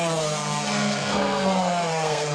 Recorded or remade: remade